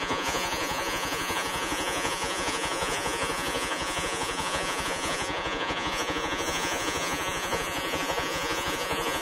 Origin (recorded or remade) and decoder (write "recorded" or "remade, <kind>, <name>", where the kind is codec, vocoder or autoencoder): remade, vocoder, Vocos